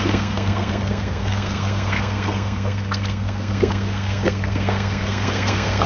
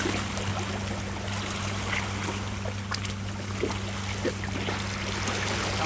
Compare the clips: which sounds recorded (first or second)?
second